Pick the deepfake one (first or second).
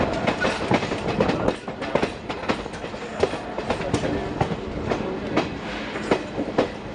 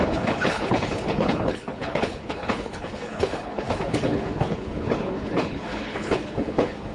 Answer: second